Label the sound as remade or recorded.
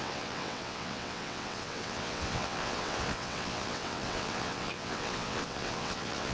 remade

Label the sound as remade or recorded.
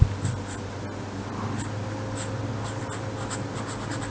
recorded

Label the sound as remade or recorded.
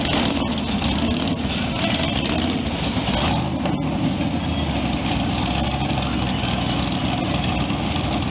recorded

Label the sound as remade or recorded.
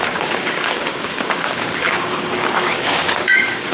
remade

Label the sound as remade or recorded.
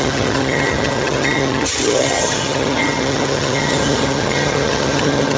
remade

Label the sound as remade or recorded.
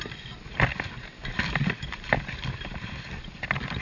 recorded